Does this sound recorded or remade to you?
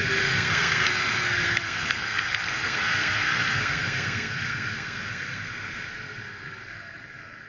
remade